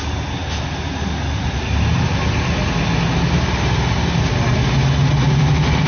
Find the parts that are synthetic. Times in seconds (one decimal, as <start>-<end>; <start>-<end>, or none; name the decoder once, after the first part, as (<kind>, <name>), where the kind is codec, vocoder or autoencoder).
none